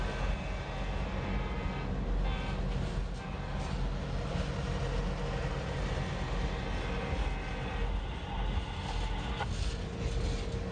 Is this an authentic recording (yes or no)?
yes